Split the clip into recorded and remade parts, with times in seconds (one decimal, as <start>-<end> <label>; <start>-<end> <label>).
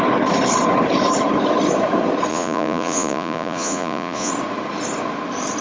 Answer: 0.0-2.3 recorded; 2.3-4.3 remade; 4.3-5.6 recorded